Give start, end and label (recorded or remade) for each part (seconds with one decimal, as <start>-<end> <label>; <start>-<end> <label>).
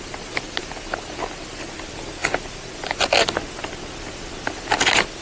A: 0.0-5.2 recorded